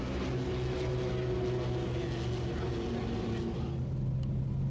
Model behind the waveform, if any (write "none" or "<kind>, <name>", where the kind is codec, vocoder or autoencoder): none